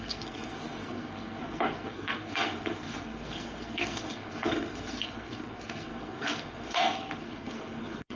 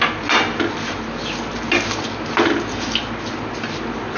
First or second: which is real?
second